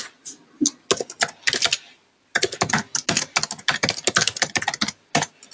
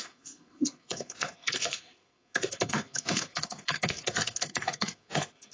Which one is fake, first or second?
second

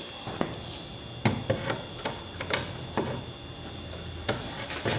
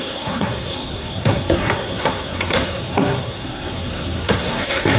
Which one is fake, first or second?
second